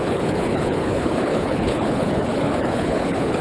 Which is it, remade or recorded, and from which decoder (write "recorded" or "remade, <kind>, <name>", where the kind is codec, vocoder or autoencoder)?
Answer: remade, codec, HILCodec